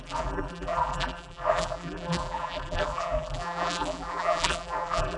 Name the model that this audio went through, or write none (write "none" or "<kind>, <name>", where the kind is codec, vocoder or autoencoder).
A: vocoder, BigVGAN v2